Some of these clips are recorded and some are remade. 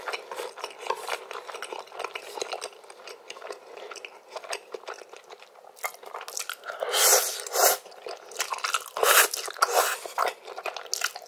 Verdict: recorded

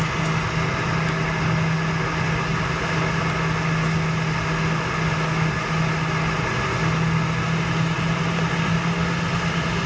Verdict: recorded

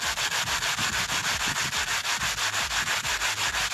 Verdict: recorded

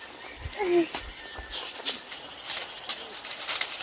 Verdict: remade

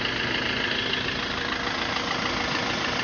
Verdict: recorded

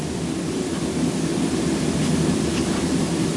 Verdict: remade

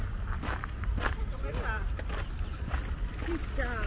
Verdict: remade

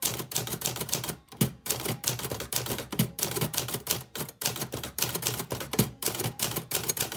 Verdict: remade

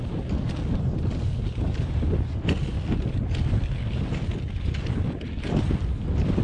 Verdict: recorded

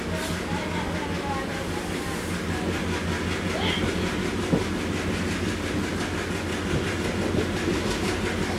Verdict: recorded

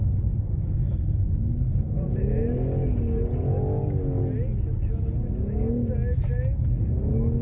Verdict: recorded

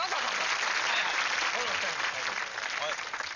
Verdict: recorded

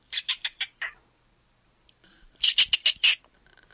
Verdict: recorded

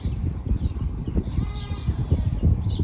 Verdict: remade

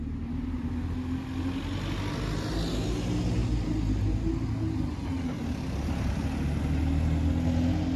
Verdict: recorded